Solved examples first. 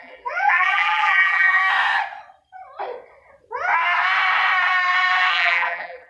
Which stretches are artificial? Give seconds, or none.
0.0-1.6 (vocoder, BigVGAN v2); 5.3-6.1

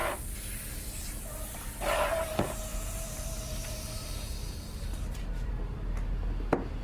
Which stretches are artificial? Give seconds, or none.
0.0-1.7 (vocoder, BigVGAN v2); 2.7-5.5